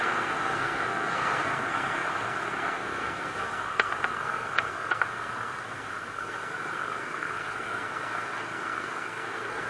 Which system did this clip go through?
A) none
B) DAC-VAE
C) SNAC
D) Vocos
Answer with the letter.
C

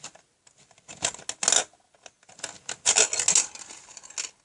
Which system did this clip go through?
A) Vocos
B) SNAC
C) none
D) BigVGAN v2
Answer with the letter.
C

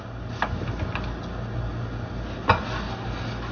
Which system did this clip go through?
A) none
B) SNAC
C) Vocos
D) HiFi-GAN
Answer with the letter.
A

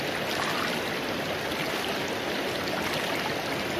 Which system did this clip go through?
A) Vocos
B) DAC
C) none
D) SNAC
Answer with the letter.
C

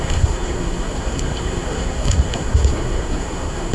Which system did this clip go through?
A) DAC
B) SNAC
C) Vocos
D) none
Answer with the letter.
B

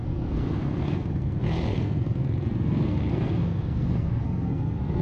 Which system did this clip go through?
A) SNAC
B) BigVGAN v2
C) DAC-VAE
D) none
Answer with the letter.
A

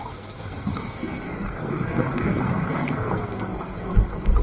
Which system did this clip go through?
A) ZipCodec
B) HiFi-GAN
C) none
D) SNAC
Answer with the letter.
D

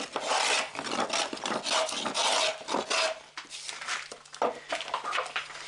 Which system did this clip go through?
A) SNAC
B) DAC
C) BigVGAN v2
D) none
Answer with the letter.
D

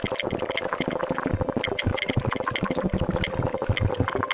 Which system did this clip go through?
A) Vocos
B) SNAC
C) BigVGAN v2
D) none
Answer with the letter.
D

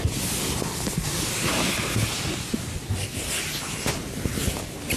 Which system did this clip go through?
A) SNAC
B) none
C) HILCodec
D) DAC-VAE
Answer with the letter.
B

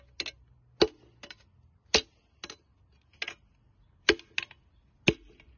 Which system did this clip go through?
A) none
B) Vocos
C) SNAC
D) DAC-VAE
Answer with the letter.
A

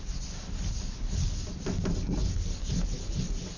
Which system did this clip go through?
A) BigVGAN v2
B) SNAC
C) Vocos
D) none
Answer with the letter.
D